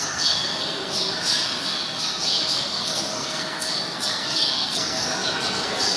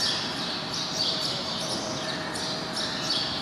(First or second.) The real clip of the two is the second